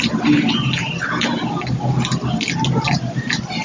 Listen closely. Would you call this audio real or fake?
real